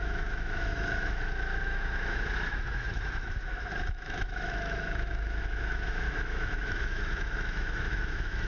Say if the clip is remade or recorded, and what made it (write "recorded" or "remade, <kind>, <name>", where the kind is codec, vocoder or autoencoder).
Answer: remade, autoencoder, DAC-VAE